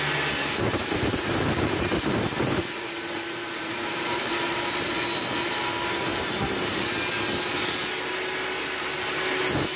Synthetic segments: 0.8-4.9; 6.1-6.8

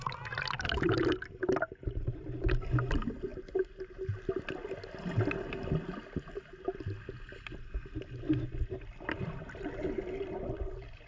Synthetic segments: none

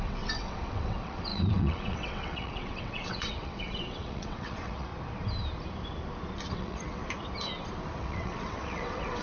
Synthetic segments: 0.0-4.9; 6.5-7.0; 8.0-9.2

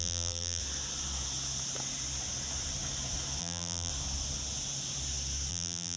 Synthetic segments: 0.0-0.6; 3.4-3.9; 5.5-6.0

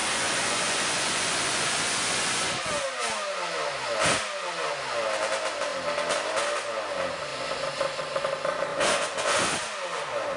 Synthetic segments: 0.0-2.7; 8.7-9.5

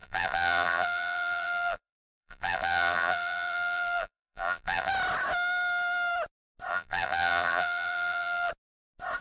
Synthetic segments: 0.0-4.9; 6.7-8.5